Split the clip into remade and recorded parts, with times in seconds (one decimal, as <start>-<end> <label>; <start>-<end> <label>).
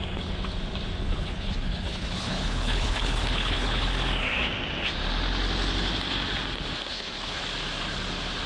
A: 0.0-1.0 recorded; 1.0-3.9 remade; 3.9-6.9 recorded; 6.9-7.4 remade; 7.4-8.5 recorded